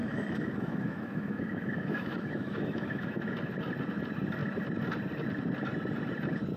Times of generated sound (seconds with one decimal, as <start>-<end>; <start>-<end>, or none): 0.0-3.5